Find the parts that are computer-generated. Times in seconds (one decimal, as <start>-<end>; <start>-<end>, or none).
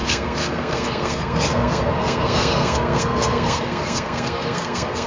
0.0-5.1